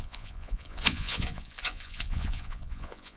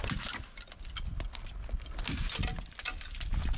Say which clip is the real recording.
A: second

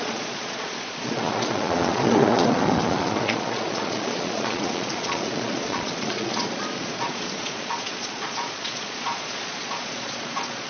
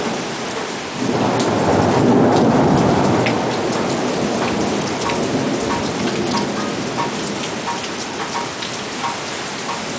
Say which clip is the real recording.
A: second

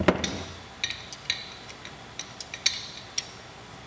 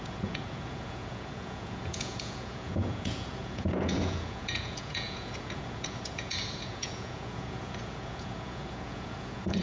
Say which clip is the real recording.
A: first